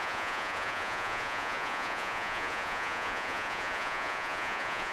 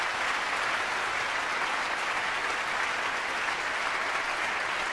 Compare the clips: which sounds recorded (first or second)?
second